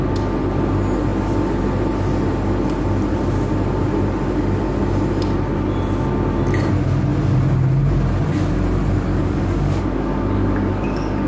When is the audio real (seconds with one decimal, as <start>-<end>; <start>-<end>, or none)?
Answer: 0.0-9.1